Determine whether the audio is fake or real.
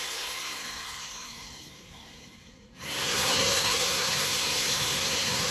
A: fake